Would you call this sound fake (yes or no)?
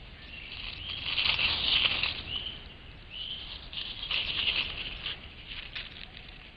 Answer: no